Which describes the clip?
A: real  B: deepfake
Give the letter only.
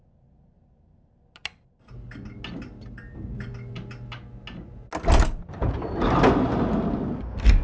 A